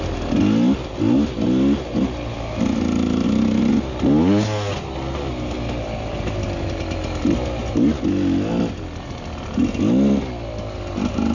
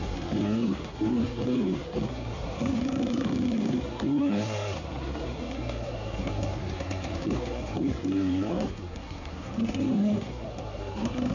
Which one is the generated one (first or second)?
second